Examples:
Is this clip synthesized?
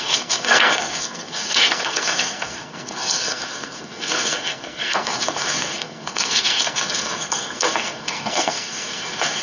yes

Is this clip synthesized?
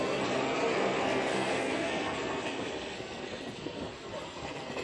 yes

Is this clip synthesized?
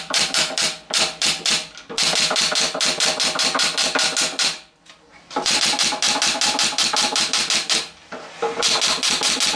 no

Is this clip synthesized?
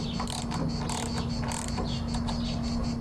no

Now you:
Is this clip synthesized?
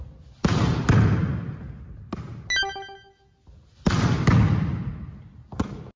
no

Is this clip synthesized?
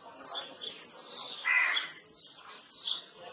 no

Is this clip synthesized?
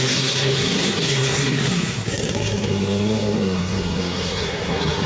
yes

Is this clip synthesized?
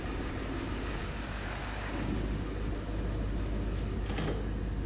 no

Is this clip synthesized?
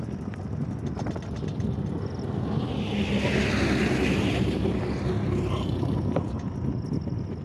no